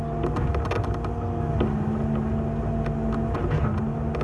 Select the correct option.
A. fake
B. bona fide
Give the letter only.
B